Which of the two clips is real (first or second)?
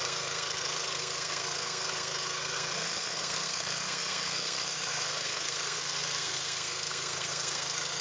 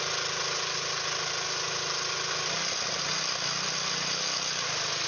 second